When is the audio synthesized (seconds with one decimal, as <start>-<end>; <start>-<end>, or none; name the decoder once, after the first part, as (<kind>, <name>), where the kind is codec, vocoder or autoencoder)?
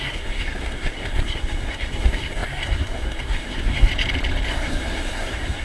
0.0-3.9 (codec, SNAC); 4.5-5.6